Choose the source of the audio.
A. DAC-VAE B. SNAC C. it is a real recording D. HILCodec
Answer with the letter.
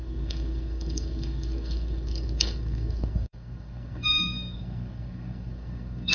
B